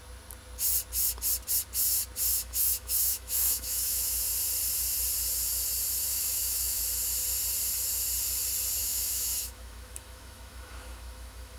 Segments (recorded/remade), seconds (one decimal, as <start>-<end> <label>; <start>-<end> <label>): 0.0-2.3 recorded; 2.3-4.2 remade; 4.2-6.1 recorded; 6.1-6.8 remade; 6.8-8.8 recorded; 8.8-11.6 remade